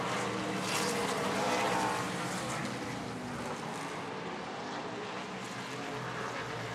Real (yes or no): yes